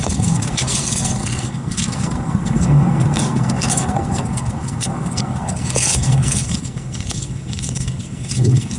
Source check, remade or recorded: remade